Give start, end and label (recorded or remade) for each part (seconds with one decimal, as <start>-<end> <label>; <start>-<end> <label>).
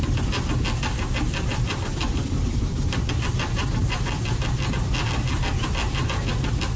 0.0-6.8 recorded